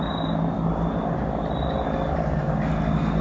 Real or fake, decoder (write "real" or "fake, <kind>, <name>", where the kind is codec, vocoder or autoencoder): real